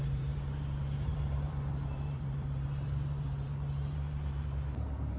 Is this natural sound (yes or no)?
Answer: no